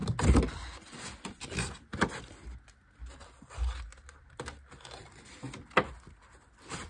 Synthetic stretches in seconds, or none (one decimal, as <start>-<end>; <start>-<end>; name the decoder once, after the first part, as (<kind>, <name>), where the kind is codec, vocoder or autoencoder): none